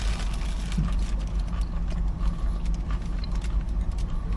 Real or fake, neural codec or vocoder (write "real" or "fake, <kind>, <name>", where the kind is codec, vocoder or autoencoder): real